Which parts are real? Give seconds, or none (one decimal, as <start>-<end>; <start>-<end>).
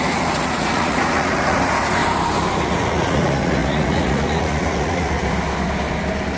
2.0-2.6; 5.2-6.4